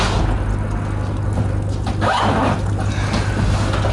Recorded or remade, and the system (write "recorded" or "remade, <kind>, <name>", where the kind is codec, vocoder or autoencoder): recorded